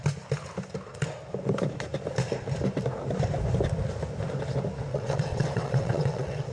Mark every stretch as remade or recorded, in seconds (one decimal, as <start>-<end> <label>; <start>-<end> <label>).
0.0-4.9 recorded; 4.9-6.5 remade